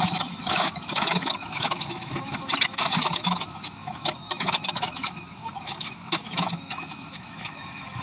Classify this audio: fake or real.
fake